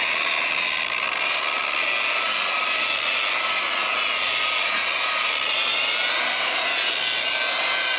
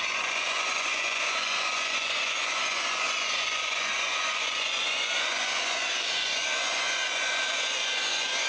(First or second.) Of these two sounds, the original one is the first